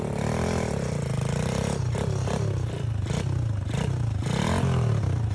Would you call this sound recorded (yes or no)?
yes